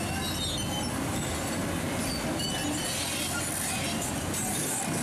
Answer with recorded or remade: recorded